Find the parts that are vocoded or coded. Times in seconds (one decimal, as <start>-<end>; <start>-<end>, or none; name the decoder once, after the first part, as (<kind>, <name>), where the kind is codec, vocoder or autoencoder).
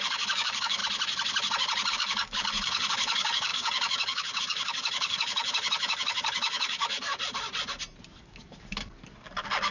0.0-0.8 (codec, DAC); 1.9-7.1; 8.2-9.7